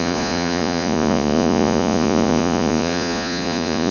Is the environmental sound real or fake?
fake